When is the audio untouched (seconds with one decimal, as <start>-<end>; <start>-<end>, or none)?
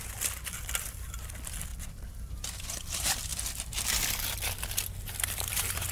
3.3-5.0